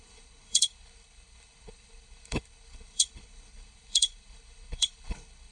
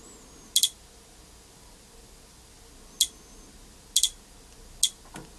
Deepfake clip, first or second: first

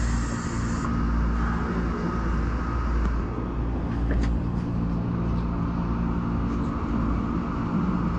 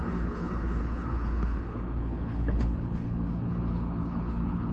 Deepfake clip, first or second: second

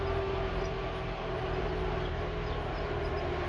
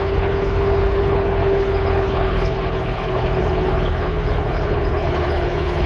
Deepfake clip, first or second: second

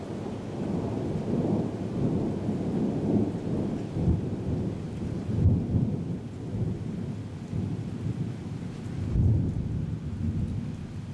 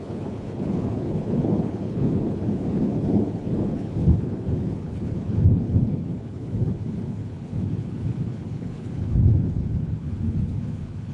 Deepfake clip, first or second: second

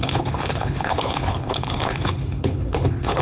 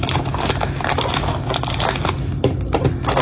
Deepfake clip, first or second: first